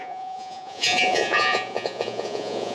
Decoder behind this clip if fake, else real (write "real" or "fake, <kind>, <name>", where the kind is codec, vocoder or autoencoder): fake, vocoder, Vocos